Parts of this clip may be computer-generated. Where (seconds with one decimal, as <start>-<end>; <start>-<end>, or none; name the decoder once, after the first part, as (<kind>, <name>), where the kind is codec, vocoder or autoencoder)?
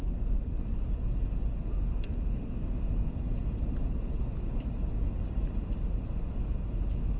1.9-3.1 (autoencoder, DAC-VAE)